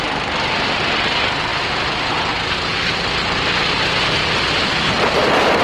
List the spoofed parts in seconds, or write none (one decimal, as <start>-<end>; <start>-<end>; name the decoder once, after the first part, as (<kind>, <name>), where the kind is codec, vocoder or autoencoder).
none